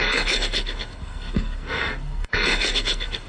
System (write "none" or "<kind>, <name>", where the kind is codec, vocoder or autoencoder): codec, SNAC